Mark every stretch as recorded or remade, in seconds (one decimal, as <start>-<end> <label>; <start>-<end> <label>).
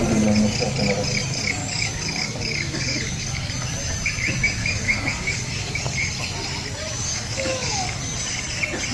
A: 0.0-1.6 recorded; 1.6-3.5 remade; 3.5-4.6 recorded; 4.6-5.8 remade; 5.8-7.1 recorded; 7.1-8.0 remade; 8.0-8.9 recorded